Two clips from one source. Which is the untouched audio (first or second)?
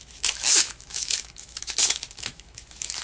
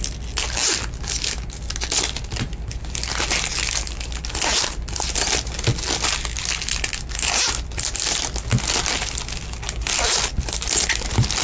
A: second